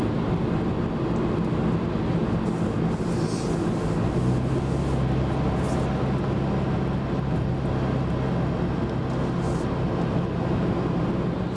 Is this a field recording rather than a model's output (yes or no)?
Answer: yes